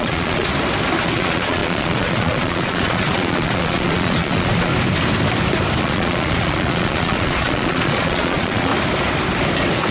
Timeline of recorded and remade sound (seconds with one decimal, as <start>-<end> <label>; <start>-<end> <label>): 0.0-0.5 remade; 0.5-1.0 recorded; 1.0-4.7 remade; 4.7-5.8 recorded; 5.8-8.7 remade; 8.7-9.9 recorded